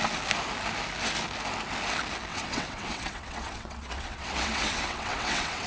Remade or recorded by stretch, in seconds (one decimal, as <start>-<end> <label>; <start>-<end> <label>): 0.0-2.3 recorded; 2.3-5.7 remade